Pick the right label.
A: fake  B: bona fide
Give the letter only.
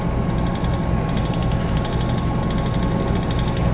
B